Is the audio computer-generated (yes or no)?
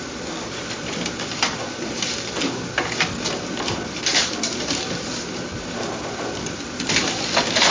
yes